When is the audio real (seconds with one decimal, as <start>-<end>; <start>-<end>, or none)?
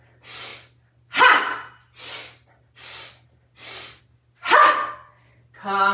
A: 0.0-5.9